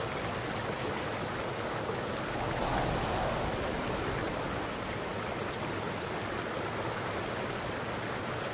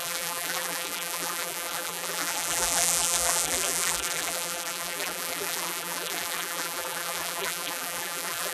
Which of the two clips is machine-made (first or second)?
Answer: second